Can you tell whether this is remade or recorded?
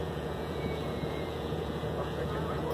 remade